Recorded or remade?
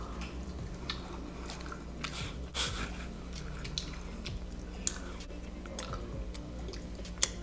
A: recorded